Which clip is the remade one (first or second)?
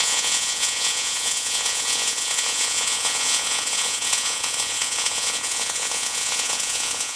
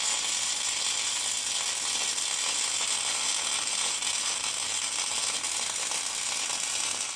first